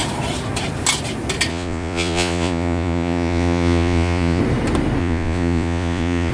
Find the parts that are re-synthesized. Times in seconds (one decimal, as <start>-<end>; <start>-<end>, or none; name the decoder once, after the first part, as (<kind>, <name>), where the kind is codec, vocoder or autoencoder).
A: 1.5-4.4 (vocoder, Vocos); 5.0-6.3